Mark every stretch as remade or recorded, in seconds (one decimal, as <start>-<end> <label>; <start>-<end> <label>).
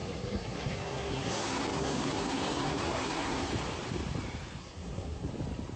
0.0-3.5 remade; 3.5-4.6 recorded; 4.6-5.3 remade; 5.3-5.8 recorded